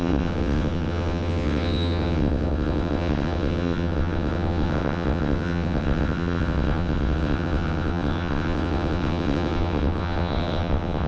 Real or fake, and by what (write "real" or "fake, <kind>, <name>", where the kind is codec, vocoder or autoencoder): fake, vocoder, WaveNeXt